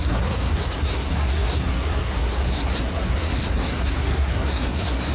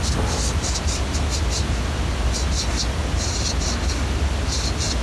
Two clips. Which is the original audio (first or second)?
second